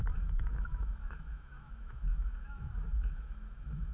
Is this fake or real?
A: fake